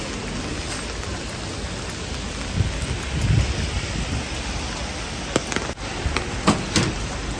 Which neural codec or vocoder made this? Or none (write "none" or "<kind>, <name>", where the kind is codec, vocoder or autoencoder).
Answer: none